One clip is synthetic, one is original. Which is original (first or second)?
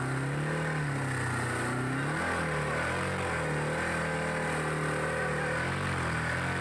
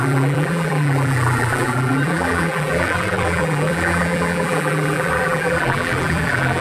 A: first